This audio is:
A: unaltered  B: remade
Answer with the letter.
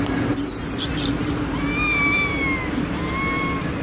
A